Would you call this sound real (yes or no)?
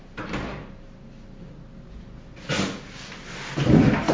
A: yes